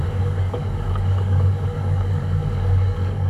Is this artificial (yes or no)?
yes